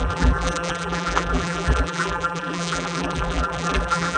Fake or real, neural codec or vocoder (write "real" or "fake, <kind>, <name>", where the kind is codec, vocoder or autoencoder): fake, vocoder, BigVGAN v2